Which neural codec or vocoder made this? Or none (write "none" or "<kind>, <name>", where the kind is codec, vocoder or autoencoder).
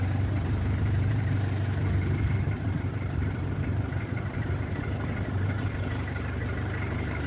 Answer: vocoder, BigVGAN v2